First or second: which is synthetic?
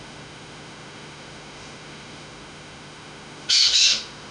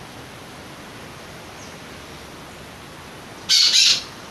first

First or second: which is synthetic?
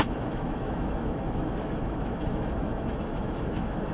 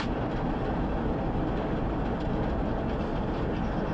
first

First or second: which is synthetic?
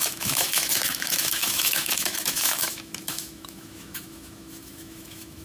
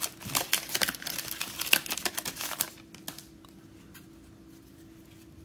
first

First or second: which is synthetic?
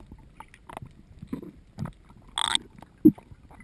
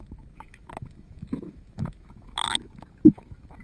second